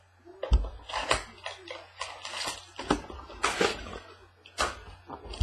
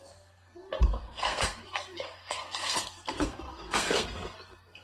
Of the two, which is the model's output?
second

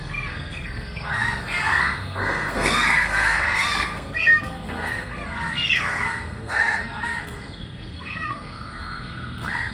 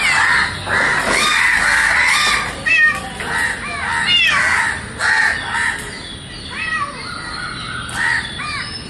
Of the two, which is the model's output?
first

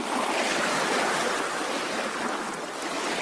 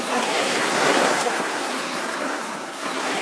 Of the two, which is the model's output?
second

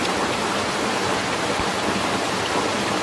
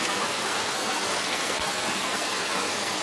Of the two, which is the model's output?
second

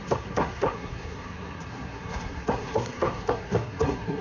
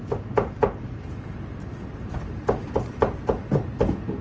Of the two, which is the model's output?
first